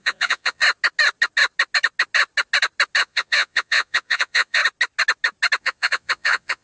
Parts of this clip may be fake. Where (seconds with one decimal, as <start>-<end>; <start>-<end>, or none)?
0.0-0.6; 3.0-4.6; 5.6-6.6